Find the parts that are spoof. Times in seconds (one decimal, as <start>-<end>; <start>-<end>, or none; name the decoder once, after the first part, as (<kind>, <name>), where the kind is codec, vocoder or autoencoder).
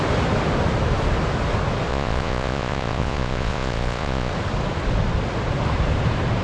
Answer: 1.9-4.3 (vocoder, Vocos)